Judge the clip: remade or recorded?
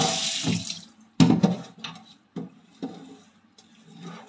recorded